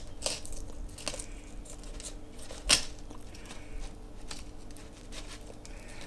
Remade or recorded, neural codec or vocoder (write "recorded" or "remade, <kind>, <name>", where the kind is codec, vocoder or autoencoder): recorded